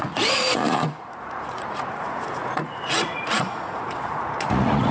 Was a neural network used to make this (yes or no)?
yes